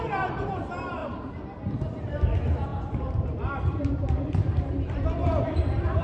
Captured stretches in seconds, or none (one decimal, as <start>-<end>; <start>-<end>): none